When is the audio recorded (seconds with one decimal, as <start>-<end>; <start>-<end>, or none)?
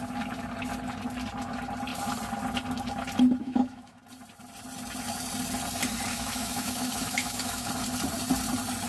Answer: 0.0-3.4; 4.0-6.1; 7.7-8.9